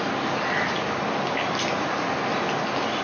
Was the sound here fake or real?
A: real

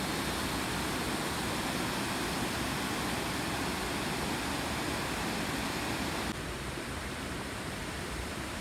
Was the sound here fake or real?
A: real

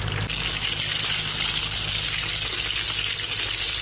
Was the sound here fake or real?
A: real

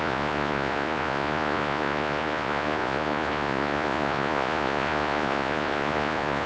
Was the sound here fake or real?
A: fake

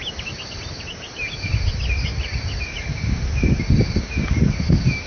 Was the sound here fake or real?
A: real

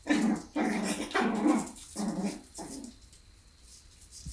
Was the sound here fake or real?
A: real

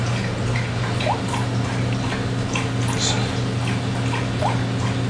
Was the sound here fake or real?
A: real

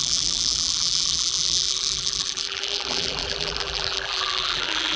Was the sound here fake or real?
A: fake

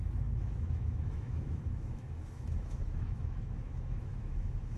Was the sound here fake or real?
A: fake